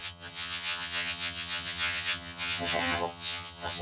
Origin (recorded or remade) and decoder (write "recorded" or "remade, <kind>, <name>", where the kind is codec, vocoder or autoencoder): remade, vocoder, HiFi-GAN